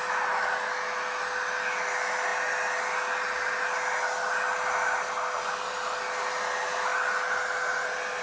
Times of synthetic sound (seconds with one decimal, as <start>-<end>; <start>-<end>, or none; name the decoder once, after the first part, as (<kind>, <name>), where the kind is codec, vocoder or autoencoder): none

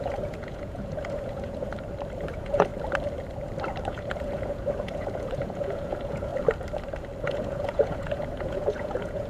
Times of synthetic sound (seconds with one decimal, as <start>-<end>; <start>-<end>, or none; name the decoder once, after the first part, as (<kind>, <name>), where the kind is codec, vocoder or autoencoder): 0.0-1.7 (vocoder, Vocos); 2.3-2.7; 3.9-6.3; 7.2-9.3